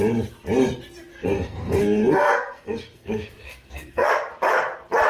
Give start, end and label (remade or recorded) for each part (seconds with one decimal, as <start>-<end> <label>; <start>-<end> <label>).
0.0-1.1 recorded; 1.1-4.1 remade; 4.1-5.1 recorded